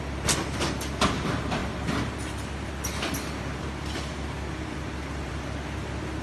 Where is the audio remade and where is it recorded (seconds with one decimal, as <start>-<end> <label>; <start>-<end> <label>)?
0.0-6.2 recorded